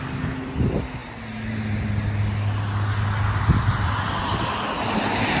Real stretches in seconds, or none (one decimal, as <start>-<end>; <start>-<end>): 0.0-5.4